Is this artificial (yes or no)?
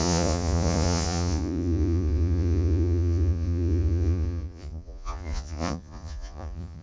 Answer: yes